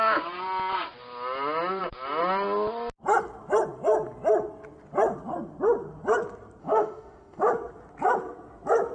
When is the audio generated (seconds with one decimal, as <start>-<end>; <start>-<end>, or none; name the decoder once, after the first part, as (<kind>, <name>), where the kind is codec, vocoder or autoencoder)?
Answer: 6.6-7.5 (autoencoder, DAC-VAE)